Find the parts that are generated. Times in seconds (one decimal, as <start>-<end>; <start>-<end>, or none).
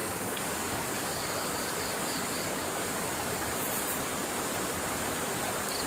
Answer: 0.0-3.5